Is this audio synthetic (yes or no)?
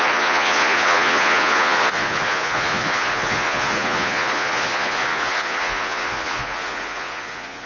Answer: yes